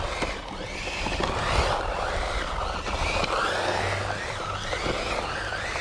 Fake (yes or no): no